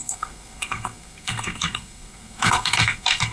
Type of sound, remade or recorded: remade